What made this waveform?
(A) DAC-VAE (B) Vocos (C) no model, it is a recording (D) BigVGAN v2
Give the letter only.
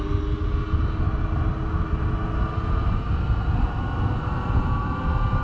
C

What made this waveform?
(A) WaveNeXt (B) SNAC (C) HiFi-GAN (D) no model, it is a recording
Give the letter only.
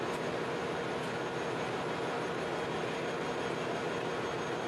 D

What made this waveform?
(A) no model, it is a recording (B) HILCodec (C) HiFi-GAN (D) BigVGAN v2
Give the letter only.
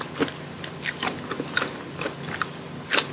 A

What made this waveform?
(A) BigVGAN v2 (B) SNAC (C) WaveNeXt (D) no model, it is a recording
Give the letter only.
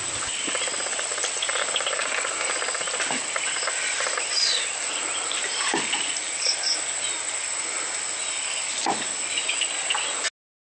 D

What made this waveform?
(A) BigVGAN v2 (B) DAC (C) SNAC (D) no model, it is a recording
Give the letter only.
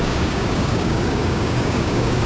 B